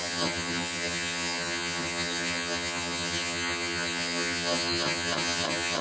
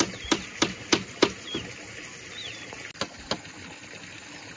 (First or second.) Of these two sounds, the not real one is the first